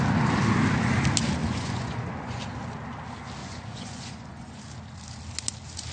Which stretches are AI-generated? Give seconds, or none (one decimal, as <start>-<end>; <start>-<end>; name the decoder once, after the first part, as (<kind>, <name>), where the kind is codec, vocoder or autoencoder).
1.4-2.4 (vocoder, Vocos); 3.4-4.6